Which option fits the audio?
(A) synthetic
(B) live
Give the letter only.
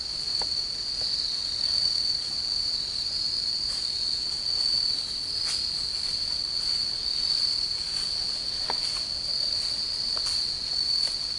B